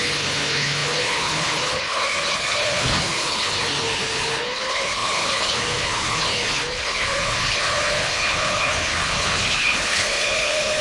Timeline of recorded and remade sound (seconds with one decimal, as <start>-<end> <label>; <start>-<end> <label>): 0.0-10.8 remade